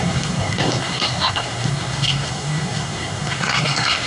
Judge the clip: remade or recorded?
remade